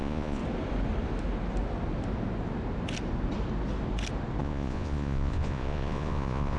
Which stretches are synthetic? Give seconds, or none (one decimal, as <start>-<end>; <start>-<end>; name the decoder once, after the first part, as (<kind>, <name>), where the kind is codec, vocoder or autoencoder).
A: 0.0-0.4 (vocoder, Vocos); 4.4-6.6